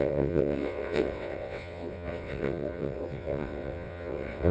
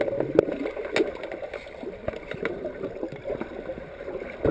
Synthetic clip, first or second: first